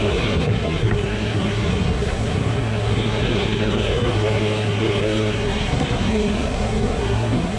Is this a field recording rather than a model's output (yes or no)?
no